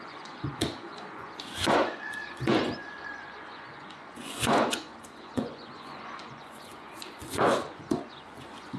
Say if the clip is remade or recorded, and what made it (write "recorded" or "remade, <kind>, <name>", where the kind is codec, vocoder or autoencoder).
remade, vocoder, Vocos